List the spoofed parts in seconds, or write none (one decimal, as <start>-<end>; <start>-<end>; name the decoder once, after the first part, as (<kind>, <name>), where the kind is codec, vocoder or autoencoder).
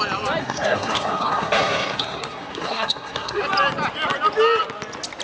0.4-3.4 (codec, SNAC)